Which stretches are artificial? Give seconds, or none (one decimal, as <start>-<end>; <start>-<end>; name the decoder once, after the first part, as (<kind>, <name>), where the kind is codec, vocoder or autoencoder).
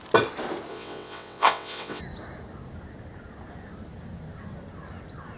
0.7-2.0 (vocoder, WaveNeXt)